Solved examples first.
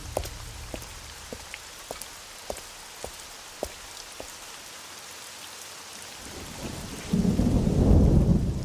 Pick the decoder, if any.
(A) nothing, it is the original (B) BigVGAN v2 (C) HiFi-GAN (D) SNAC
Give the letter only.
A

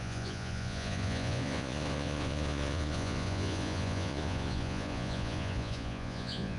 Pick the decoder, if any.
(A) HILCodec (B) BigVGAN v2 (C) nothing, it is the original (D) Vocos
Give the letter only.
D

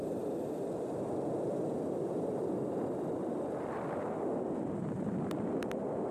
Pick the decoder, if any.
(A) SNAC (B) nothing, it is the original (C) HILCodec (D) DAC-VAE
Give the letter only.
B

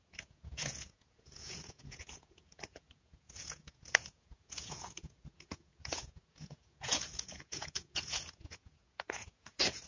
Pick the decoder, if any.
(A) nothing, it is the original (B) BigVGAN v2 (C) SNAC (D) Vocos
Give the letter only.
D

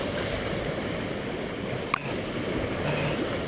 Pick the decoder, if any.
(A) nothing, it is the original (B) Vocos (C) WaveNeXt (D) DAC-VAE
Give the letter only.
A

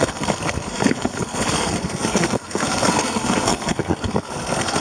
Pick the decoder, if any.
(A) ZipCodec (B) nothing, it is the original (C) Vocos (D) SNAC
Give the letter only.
D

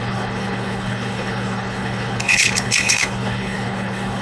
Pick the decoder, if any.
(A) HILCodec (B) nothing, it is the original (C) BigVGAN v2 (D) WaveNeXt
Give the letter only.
A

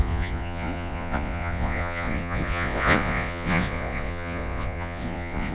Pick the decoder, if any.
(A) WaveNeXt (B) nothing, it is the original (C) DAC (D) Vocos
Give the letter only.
D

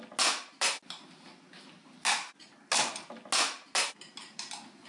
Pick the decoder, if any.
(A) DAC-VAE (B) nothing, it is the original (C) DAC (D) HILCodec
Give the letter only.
B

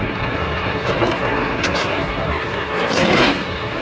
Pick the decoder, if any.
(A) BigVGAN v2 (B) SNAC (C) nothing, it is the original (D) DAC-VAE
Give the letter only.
B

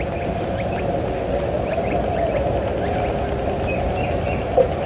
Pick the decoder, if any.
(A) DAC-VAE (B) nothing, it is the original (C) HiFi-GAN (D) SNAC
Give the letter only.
B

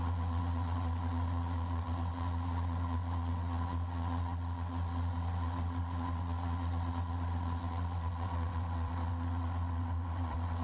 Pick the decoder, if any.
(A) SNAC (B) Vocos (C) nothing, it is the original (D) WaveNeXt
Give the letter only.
D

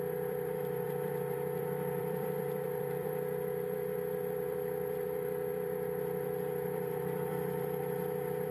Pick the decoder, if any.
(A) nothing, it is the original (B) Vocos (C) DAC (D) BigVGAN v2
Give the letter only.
D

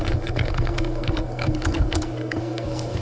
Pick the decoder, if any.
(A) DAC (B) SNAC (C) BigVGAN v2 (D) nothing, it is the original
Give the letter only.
B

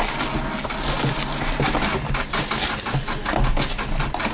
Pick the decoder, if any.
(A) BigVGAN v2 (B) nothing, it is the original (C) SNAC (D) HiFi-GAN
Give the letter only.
B